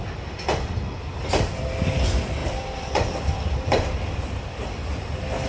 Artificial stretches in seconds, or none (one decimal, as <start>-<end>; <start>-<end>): none